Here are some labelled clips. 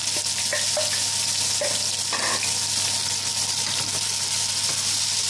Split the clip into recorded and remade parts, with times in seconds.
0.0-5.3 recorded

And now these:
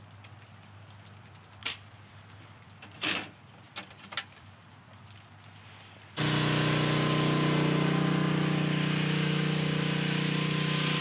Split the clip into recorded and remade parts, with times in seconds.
0.0-1.6 recorded; 1.6-5.2 remade; 5.2-11.0 recorded

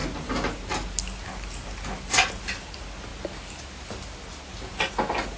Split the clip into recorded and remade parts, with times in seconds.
0.0-5.4 recorded

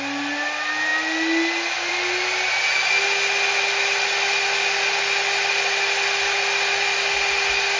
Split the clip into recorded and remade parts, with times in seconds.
0.0-7.8 recorded

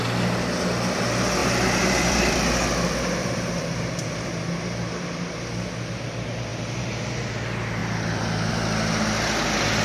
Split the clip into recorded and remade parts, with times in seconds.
0.0-1.4 recorded; 1.4-3.9 remade; 3.9-7.8 recorded; 7.8-8.5 remade; 8.5-9.8 recorded